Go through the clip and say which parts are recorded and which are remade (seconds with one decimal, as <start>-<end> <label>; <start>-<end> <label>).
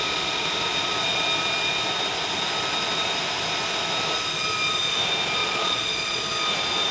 0.0-5.4 recorded; 5.4-6.2 remade; 6.2-6.9 recorded